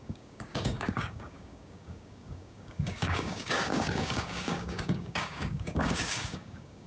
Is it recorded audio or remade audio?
remade